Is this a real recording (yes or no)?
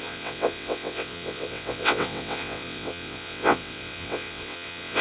no